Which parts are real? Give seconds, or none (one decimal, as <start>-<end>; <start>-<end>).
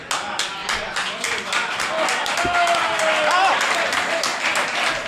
0.0-0.6; 1.8-5.1